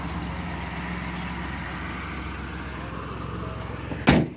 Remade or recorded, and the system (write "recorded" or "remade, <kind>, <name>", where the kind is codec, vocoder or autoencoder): recorded